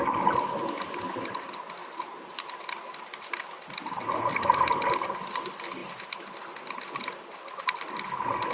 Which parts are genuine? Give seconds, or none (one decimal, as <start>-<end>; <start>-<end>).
0.0-8.5